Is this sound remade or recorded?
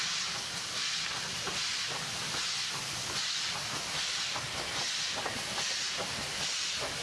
recorded